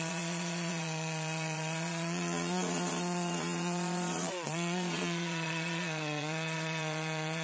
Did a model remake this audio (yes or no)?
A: yes